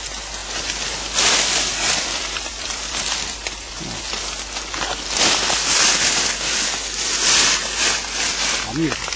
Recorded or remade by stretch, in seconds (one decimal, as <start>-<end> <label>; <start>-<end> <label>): 0.0-1.7 recorded; 1.7-4.1 remade; 4.1-9.2 recorded